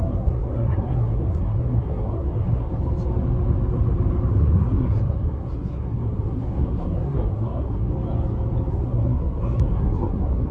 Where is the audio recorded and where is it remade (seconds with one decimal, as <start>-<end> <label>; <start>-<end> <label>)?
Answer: 0.0-2.7 remade; 2.7-4.3 recorded; 4.3-7.9 remade; 7.9-8.7 recorded; 8.7-10.5 remade